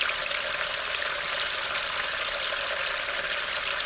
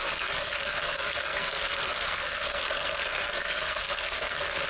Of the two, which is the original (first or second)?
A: first